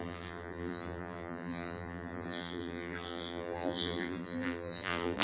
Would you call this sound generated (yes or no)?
yes